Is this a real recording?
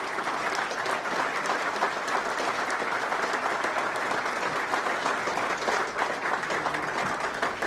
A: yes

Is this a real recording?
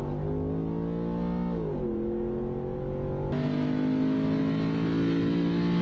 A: yes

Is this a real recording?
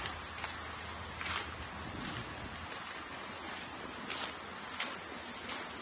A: yes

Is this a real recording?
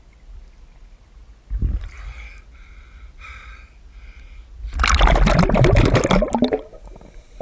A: yes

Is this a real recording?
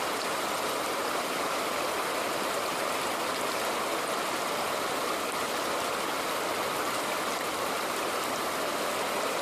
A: yes